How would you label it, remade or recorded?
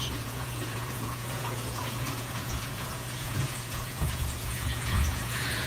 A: remade